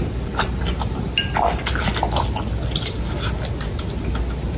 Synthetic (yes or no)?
no